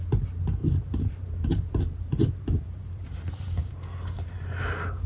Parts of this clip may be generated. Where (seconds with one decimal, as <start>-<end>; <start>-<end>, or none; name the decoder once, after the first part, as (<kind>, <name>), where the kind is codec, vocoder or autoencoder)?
0.6-3.7 (vocoder, BigVGAN v2)